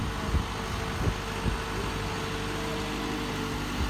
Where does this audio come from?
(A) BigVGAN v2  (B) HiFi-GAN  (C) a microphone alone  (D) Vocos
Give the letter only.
C